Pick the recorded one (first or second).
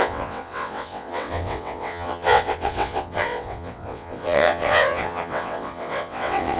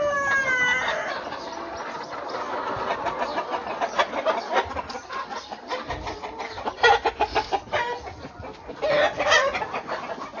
second